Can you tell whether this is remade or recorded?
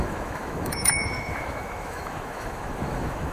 remade